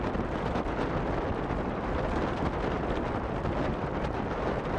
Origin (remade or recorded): recorded